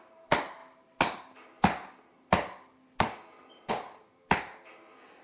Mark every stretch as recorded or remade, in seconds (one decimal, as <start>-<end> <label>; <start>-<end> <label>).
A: 0.0-5.2 recorded